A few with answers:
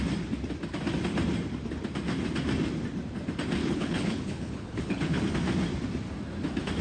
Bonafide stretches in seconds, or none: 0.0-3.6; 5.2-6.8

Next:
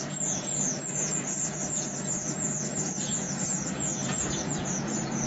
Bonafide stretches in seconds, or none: none

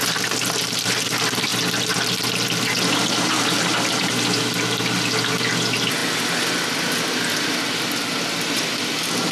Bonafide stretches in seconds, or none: 0.0-9.3

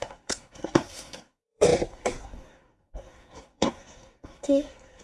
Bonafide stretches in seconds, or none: none

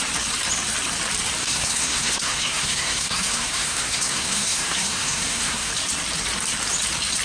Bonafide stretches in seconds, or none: 0.0-1.4; 5.7-7.2